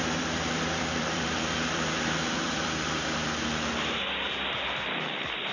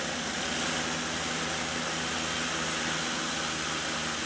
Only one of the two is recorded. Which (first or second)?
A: second